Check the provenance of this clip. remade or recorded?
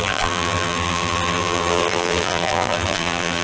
remade